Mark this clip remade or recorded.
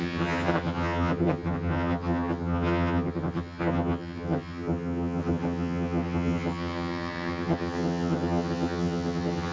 remade